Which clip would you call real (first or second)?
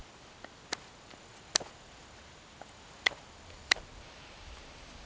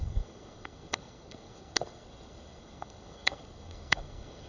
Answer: first